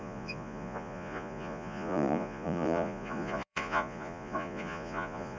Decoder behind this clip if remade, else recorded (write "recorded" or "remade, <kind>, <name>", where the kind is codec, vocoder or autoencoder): remade, vocoder, Vocos